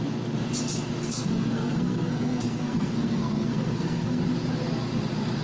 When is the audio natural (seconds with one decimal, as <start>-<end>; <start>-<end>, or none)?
0.0-1.0; 4.2-5.4

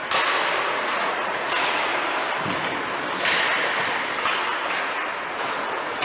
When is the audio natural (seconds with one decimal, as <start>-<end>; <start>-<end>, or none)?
0.0-0.6; 1.9-5.5

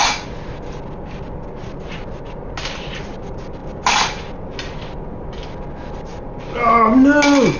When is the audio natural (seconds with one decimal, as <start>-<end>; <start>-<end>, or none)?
0.0-7.6

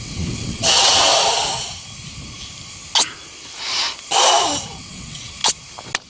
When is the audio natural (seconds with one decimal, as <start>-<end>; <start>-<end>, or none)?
1.1-4.8; 5.4-6.1